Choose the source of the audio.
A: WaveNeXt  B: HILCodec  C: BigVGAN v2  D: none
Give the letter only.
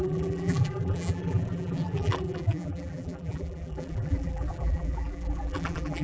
C